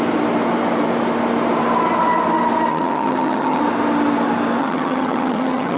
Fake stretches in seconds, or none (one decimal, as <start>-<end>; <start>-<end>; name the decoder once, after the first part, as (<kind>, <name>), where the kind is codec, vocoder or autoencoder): 2.7-3.6 (vocoder, HiFi-GAN); 4.6-5.8